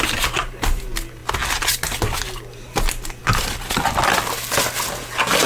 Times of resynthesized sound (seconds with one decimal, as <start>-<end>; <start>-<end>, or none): none